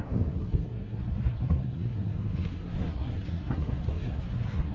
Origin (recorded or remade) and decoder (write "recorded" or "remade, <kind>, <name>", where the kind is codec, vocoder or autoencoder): remade, codec, SNAC